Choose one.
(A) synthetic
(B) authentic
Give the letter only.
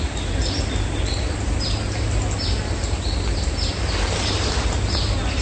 B